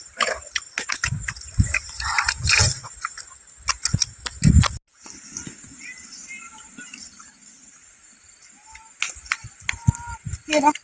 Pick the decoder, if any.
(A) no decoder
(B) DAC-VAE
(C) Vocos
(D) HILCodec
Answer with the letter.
A